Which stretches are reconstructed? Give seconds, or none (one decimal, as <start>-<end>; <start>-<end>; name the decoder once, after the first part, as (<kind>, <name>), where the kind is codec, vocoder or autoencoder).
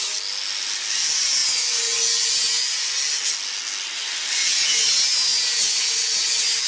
none